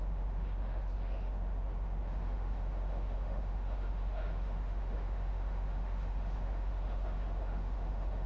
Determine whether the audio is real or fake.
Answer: fake